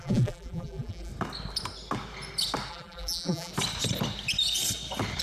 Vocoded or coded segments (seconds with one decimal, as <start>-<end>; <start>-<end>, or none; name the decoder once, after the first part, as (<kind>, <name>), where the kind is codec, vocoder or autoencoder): 0.0-1.1 (vocoder, BigVGAN v2); 2.7-3.5